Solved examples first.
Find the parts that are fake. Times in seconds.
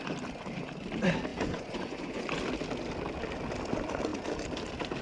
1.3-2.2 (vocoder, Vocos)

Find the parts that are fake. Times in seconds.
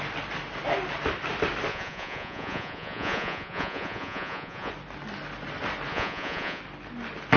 1.7-4.7 (vocoder, Vocos); 5.9-6.6